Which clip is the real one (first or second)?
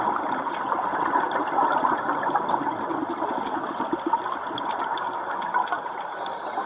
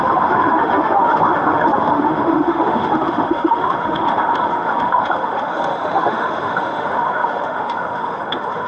first